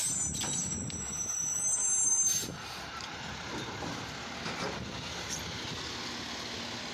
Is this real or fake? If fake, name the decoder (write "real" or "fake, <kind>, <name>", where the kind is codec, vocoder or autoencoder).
real